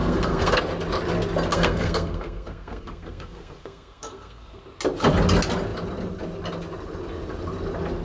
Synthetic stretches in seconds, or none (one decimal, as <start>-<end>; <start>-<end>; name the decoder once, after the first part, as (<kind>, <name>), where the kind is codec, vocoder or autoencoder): 0.0-0.6 (codec, SNAC); 1.5-4.6